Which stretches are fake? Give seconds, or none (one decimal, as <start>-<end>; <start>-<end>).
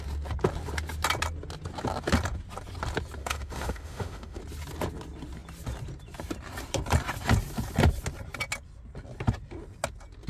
3.2-4.4